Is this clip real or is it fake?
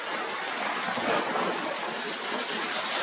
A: real